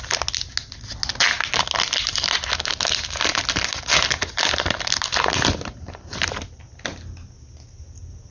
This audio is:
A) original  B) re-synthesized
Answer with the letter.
A